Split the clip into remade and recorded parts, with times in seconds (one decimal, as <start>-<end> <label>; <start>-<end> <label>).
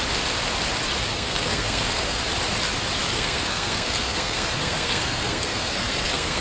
0.0-1.1 recorded; 1.1-2.2 remade; 2.2-3.1 recorded; 3.1-6.4 remade